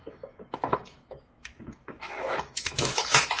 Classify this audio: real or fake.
fake